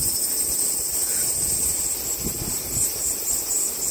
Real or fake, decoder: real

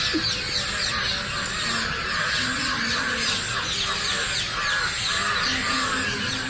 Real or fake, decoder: real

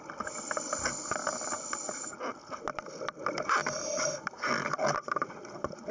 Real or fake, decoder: real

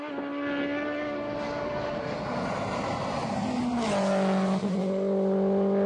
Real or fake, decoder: real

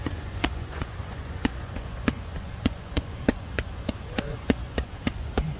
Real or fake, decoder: fake, vocoder, Vocos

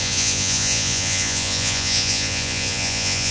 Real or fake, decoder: fake, vocoder, Vocos